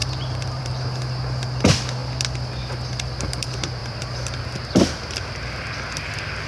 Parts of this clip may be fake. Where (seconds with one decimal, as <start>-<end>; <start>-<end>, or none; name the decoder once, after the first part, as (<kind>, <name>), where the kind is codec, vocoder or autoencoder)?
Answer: 0.0-0.8 (vocoder, BigVGAN v2); 3.8-4.4